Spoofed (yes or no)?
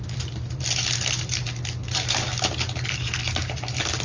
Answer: no